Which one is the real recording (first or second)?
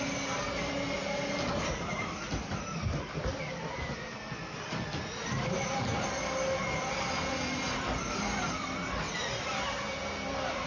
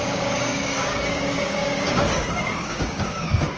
first